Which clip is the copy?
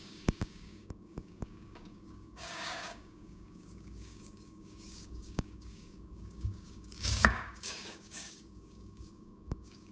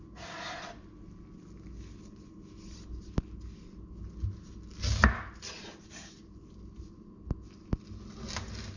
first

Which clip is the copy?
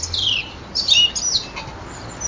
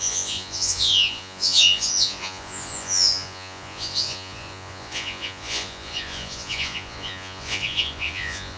second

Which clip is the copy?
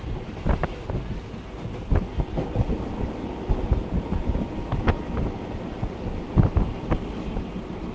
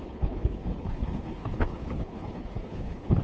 second